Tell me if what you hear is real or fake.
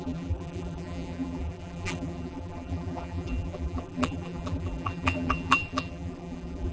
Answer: fake